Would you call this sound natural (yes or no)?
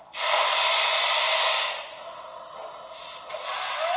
yes